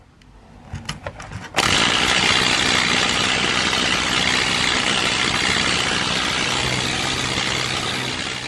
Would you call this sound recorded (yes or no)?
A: yes